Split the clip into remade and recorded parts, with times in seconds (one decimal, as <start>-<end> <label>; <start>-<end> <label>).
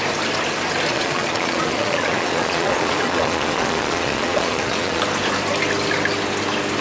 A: 0.0-0.9 recorded; 0.9-5.0 remade; 5.0-6.8 recorded